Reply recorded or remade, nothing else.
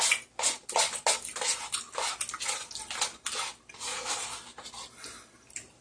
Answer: recorded